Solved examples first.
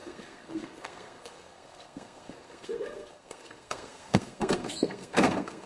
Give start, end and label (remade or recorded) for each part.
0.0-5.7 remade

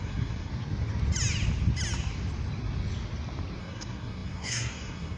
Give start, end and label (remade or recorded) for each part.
0.0-0.5 remade; 0.5-3.6 recorded; 3.6-5.2 remade